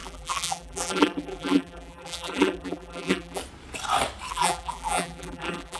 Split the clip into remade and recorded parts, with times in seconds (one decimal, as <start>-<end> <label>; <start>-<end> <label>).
0.0-3.4 remade; 3.4-4.3 recorded; 4.3-5.8 remade